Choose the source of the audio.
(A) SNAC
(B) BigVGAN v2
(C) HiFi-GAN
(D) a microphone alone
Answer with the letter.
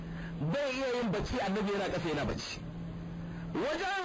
D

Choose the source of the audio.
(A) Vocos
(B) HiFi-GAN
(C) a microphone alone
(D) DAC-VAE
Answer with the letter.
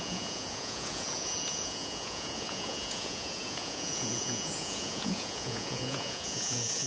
A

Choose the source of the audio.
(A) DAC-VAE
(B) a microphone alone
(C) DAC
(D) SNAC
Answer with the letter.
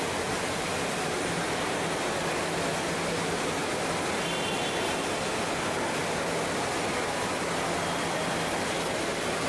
B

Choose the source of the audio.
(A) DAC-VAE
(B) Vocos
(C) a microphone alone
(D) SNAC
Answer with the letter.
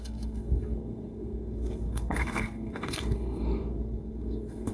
D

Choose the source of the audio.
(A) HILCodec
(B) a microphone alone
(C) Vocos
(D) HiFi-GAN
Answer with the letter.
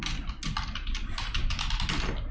B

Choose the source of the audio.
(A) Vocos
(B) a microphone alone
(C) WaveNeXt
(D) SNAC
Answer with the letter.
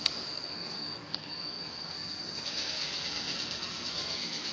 D